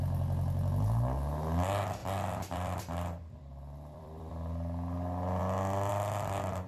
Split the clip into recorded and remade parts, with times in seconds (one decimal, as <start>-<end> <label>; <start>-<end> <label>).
0.0-2.0 recorded; 2.0-4.3 remade; 4.3-6.7 recorded